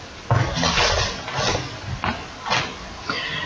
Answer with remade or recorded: recorded